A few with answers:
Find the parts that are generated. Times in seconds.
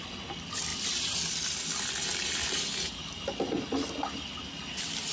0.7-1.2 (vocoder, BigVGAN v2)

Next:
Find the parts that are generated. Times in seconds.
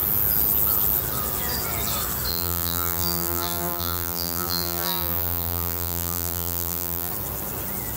2.3-7.1 (vocoder, BigVGAN v2)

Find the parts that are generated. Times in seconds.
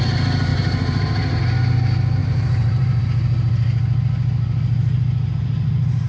0.5-1.4 (vocoder, BigVGAN v2); 2.2-3.0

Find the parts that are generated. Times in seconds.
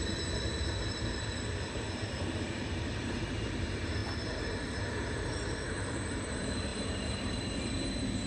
0.0-4.0 (vocoder, BigVGAN v2); 4.8-8.3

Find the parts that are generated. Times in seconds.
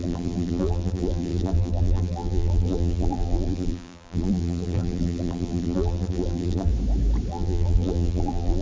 0.0-6.7 (vocoder, BigVGAN v2); 7.3-8.6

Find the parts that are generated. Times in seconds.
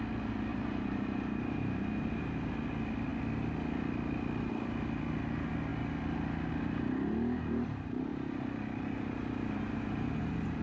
0.5-2.5 (vocoder, BigVGAN v2); 8.1-10.6